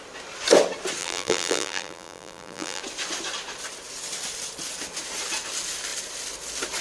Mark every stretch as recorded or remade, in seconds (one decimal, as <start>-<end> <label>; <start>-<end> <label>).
0.0-1.0 recorded; 1.0-2.8 remade; 2.8-6.8 recorded